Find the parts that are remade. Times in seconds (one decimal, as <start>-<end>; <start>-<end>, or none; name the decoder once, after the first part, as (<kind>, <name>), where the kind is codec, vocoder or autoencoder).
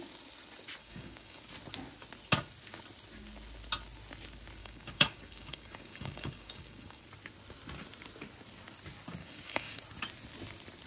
0.8-1.4 (codec, DAC); 4.6-7.0; 9.2-9.8